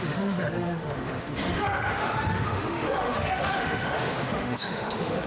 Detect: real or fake fake